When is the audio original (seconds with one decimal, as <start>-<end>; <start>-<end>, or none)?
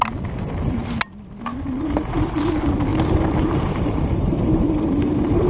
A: 0.0-1.5; 2.5-2.9